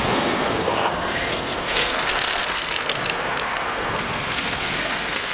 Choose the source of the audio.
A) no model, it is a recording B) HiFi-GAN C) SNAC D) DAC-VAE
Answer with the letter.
C